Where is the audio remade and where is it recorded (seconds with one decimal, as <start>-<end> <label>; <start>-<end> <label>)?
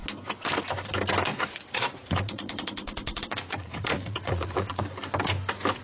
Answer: 0.0-1.3 recorded; 1.3-4.8 remade; 4.8-5.8 recorded